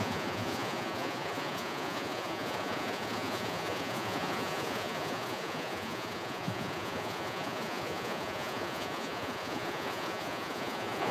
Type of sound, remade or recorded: remade